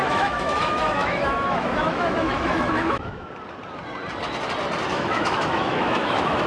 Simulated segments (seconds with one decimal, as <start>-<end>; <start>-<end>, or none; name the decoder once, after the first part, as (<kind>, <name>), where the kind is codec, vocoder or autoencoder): 0.0-3.3 (autoencoder, DAC-VAE); 4.9-6.5